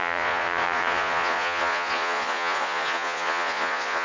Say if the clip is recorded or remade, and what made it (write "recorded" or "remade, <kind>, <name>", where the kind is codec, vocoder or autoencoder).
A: remade, vocoder, Vocos